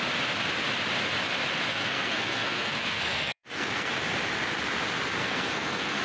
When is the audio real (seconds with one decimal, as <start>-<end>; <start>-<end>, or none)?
0.0-1.7; 3.9-5.2